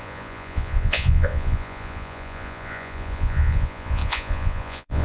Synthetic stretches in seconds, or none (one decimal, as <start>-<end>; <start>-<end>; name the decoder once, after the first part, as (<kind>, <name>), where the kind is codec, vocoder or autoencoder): 0.0-5.0 (vocoder, Vocos)